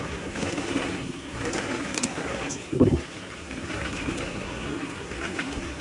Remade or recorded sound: remade